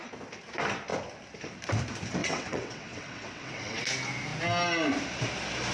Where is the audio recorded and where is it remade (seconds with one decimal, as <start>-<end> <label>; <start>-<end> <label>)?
0.0-2.2 recorded; 2.2-3.8 remade; 3.8-5.7 recorded